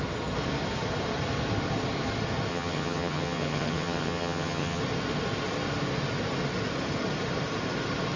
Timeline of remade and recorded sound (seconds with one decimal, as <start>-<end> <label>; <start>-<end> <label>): 0.0-2.5 recorded; 2.5-4.8 remade; 4.8-8.2 recorded